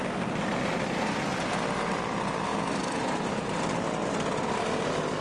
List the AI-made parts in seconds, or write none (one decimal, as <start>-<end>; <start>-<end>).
none